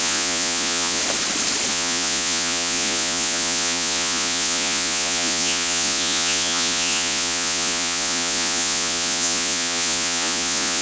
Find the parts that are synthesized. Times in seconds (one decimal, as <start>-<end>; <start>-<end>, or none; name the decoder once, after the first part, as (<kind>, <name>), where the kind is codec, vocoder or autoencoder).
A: 0.0-1.0 (vocoder, Vocos); 1.7-10.8